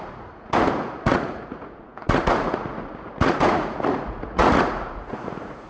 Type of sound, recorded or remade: remade